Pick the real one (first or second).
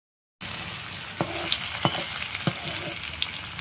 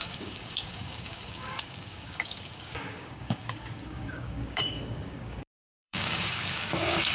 first